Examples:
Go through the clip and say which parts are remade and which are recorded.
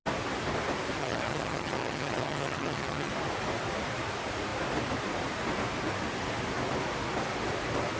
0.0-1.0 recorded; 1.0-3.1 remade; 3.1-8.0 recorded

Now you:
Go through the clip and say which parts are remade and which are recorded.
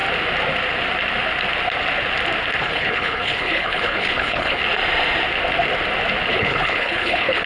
0.0-2.6 recorded; 2.6-4.6 remade; 4.6-6.3 recorded; 6.3-7.5 remade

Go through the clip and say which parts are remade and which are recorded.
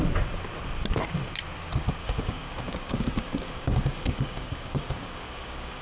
0.0-2.0 recorded; 2.0-5.8 remade